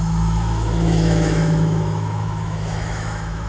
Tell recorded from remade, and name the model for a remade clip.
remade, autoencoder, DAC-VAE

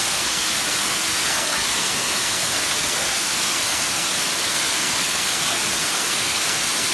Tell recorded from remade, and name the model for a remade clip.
remade, codec, SNAC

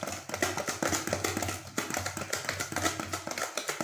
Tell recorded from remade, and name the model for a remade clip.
recorded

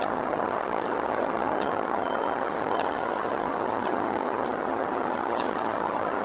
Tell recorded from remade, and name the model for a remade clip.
remade, vocoder, HiFi-GAN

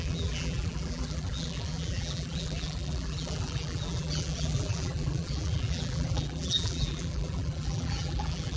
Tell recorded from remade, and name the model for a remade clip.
remade, vocoder, BigVGAN v2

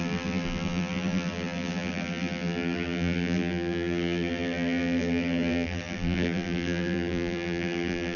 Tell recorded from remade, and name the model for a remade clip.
remade, vocoder, BigVGAN v2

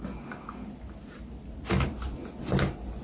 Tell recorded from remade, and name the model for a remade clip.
recorded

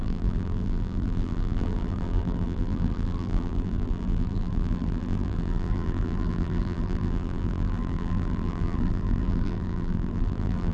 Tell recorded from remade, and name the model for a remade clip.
remade, vocoder, BigVGAN v2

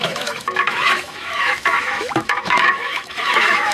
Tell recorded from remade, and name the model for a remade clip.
remade, autoencoder, DAC-VAE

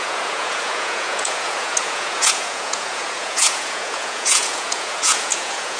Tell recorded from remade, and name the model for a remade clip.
remade, vocoder, Vocos